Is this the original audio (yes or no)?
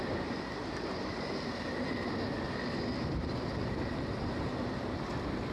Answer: yes